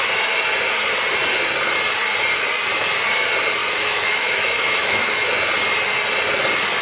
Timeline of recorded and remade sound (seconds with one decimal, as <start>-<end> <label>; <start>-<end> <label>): 0.0-3.6 recorded; 3.6-5.3 remade; 5.3-6.8 recorded